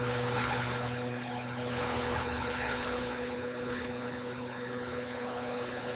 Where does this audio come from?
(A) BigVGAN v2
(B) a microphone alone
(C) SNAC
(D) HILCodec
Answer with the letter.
D